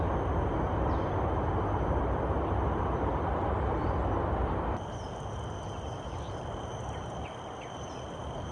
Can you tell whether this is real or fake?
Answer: real